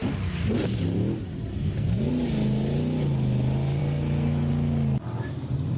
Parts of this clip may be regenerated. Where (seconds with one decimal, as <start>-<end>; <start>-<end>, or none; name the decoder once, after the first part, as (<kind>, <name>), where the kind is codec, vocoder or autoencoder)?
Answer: 1.5-2.1 (codec, SNAC); 3.8-4.5